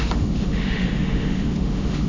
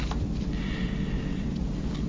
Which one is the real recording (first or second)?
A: second